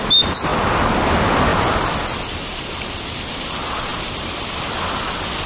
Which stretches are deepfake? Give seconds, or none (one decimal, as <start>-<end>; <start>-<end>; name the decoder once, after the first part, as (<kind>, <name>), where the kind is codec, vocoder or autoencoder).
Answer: none